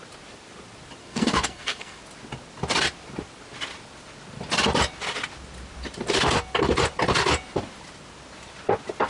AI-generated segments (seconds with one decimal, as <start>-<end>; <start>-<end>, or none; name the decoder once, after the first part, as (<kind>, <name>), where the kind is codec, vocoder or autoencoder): 1.0-2.0 (codec, SNAC)